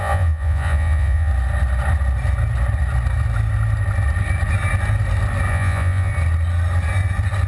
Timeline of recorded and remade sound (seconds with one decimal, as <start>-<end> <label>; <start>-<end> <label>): 0.0-1.3 remade; 1.3-5.5 recorded; 5.5-6.1 remade; 6.1-7.5 recorded